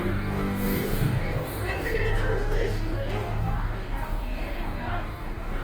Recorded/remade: remade